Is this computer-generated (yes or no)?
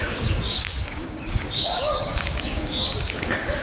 yes